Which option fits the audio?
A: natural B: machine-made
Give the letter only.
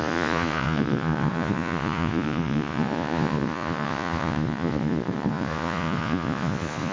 B